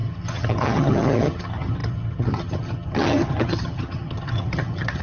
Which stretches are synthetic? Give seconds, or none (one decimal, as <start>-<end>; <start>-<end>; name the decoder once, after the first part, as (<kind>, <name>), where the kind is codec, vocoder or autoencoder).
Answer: 0.0-5.0 (vocoder, HiFi-GAN)